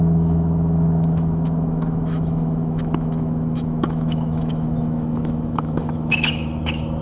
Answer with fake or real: fake